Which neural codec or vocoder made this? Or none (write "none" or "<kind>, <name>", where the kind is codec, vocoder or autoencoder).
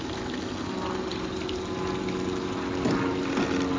none